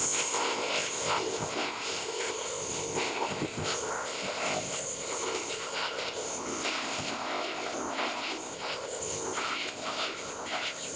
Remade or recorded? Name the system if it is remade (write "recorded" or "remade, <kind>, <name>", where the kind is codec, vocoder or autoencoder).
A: remade, codec, ZipCodec